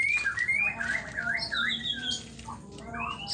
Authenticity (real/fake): real